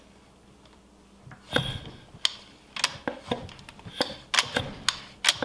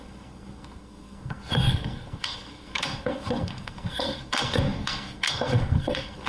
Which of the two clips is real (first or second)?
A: first